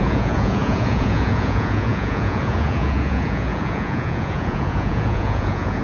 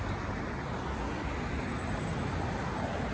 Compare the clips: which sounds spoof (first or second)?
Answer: first